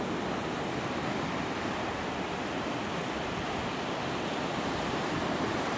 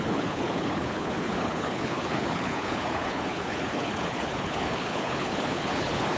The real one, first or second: first